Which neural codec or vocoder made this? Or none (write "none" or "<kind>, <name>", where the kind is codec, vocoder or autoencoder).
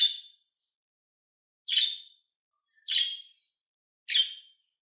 none